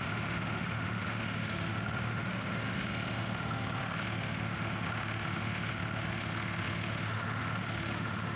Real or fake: fake